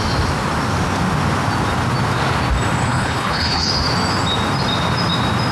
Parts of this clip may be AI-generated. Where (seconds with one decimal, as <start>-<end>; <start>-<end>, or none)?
2.8-3.7